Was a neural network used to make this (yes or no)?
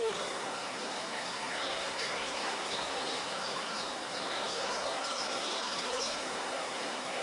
yes